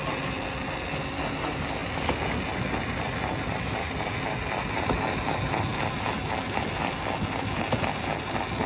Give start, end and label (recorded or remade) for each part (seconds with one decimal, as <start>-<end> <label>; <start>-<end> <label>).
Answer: 0.0-8.7 recorded